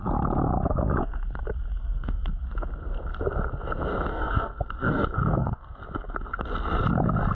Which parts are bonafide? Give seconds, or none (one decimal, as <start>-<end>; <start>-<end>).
0.0-1.7; 2.3-4.1; 5.8-7.3